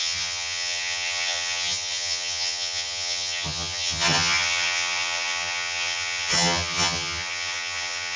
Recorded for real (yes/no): no